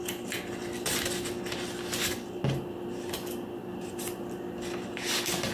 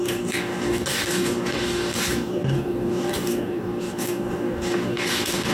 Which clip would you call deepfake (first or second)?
second